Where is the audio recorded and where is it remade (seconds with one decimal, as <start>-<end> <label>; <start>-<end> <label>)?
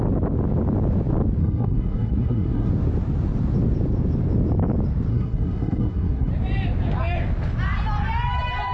0.0-1.4 recorded; 1.4-2.7 remade; 2.7-5.1 recorded; 5.1-6.3 remade; 6.3-8.7 recorded